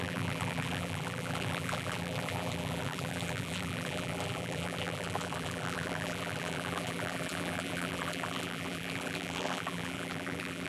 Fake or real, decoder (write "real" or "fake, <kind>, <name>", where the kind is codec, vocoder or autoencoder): fake, vocoder, BigVGAN v2